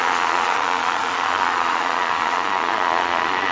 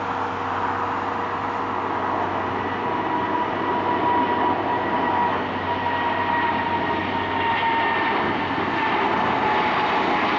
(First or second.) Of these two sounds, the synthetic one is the first